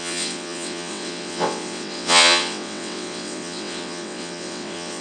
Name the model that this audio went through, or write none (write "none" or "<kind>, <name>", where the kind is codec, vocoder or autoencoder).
vocoder, WaveNeXt